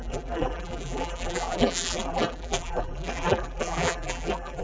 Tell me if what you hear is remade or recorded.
remade